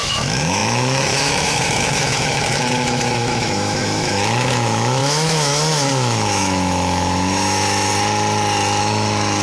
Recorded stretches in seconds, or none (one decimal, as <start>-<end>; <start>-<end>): 7.9-8.8